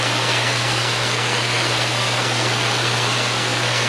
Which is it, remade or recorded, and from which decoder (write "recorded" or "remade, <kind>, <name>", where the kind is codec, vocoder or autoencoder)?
remade, codec, SNAC